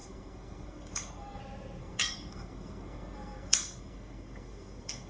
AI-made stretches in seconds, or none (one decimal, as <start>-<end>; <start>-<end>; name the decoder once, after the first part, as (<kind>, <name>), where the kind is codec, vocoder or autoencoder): 0.0-1.4 (codec, SNAC); 1.8-5.1